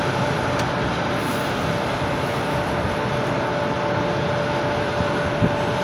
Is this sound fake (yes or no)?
no